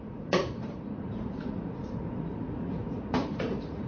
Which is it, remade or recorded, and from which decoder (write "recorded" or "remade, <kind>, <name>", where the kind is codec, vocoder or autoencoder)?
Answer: remade, vocoder, Vocos